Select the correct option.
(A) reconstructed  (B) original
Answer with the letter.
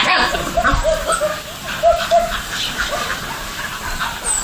B